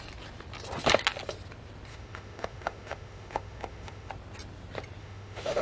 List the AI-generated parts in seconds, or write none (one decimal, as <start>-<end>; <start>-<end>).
1.9-4.1; 5.0-5.6

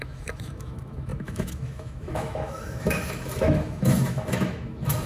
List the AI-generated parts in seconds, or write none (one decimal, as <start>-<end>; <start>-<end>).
0.0-5.1

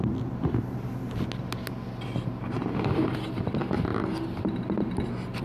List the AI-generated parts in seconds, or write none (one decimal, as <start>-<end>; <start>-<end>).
none

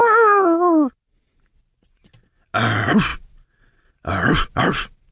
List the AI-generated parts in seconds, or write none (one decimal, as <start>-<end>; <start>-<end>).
0.0-0.9

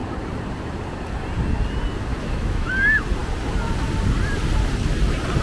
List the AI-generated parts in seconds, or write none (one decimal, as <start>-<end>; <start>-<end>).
2.1-2.7

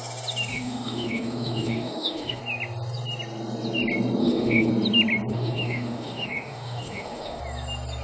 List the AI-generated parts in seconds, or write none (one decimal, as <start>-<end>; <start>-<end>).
0.5-2.4; 4.2-4.7; 5.3-7.4

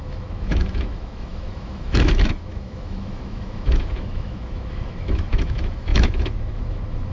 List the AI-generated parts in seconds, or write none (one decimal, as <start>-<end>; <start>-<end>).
0.0-7.1